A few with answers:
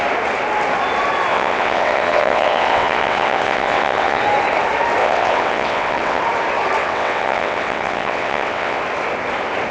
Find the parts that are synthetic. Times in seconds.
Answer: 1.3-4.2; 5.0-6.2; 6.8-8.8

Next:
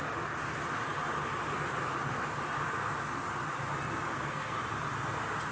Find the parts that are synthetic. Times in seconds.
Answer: 4.1-4.6

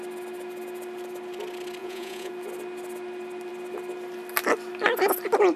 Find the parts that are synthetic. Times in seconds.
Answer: 1.8-2.3

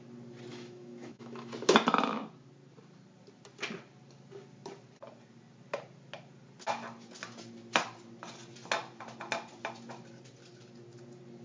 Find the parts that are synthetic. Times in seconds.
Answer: 0.5-1.5

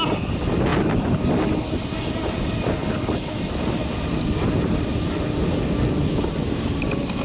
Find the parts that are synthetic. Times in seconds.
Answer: none